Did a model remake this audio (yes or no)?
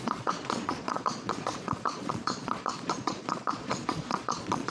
yes